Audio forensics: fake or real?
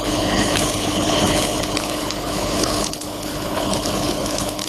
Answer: fake